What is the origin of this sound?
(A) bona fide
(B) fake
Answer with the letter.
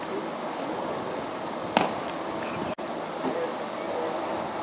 A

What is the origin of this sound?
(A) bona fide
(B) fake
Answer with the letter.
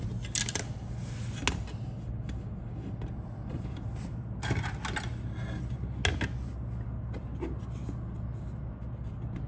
A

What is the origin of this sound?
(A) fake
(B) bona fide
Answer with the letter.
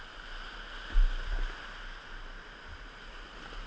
B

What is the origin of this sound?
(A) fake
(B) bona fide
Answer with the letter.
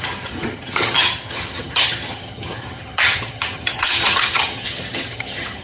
A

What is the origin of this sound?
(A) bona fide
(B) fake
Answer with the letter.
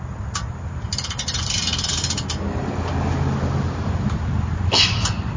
A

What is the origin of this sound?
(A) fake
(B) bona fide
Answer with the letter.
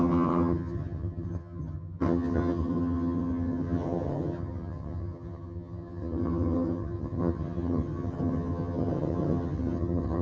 A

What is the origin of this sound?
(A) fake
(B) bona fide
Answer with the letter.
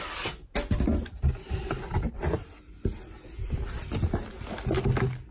B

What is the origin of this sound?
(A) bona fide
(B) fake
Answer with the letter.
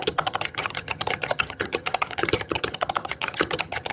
B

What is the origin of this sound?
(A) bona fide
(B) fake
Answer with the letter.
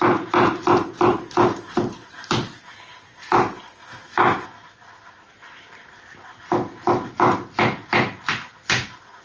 A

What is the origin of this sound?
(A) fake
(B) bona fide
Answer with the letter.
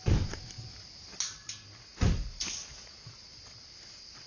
B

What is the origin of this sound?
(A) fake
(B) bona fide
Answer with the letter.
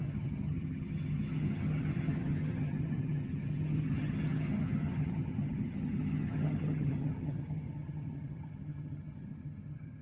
A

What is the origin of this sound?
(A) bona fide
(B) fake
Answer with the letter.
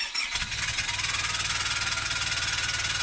A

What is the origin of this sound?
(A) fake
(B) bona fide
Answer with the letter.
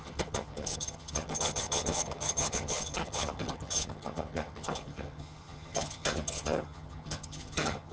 A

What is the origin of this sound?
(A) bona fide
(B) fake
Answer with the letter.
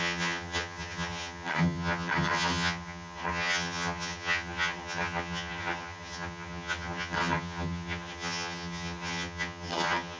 B